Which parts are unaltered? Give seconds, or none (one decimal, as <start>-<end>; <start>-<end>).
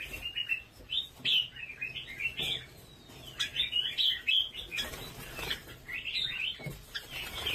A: 0.0-5.6